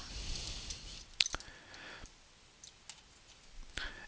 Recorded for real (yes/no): yes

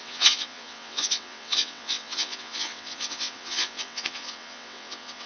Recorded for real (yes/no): no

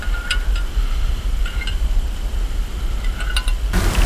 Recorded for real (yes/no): no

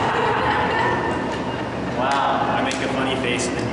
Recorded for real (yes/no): yes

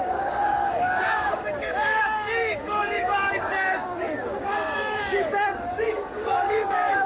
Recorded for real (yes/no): no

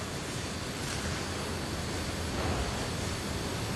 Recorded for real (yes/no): yes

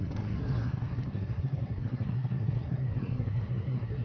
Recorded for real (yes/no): no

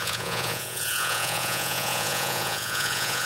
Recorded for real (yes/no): no